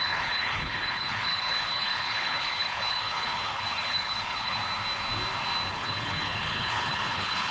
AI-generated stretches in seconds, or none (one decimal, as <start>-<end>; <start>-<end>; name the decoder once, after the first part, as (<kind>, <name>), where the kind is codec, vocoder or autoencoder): 0.0-4.6 (codec, HILCodec); 5.7-7.5